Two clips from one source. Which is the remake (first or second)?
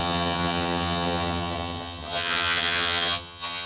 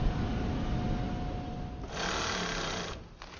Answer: first